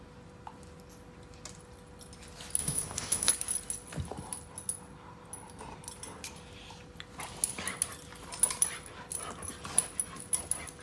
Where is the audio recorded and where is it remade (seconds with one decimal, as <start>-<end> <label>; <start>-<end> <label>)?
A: 0.0-2.6 recorded; 2.6-3.3 remade; 3.3-10.8 recorded